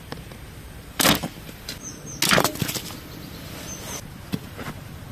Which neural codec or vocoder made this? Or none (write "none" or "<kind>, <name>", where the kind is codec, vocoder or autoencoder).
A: none